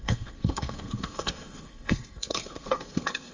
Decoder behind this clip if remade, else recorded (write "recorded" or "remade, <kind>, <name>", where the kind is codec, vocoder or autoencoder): remade, codec, SNAC